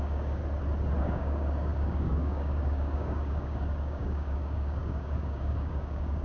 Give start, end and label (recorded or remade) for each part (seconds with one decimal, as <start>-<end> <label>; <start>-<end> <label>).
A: 0.0-0.4 remade; 0.4-1.0 recorded; 1.0-6.2 remade